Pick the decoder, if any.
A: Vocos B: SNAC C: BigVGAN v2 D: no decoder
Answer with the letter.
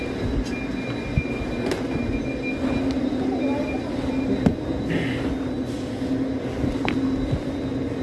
D